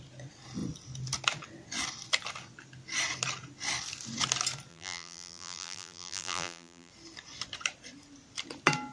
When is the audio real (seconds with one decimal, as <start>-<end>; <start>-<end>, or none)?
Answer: 0.0-4.7; 6.9-8.9